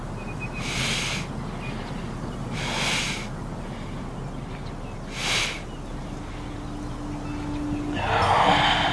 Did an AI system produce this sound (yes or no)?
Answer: no